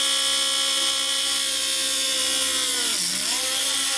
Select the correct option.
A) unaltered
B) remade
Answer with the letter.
A